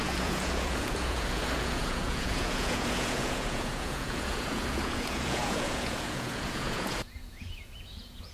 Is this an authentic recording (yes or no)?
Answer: no